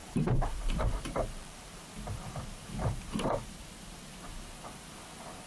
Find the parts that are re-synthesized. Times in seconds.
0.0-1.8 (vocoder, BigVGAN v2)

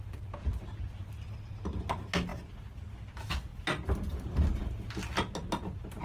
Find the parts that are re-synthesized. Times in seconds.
none

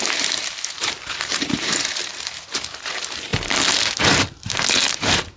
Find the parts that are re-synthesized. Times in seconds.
0.0-3.3 (vocoder, BigVGAN v2); 4.9-5.4

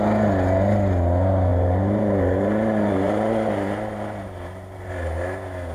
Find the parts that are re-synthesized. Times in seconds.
1.5-4.9 (vocoder, BigVGAN v2)

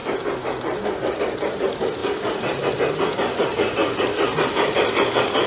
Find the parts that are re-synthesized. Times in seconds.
1.2-2.0 (vocoder, BigVGAN v2); 2.7-3.8; 4.5-5.5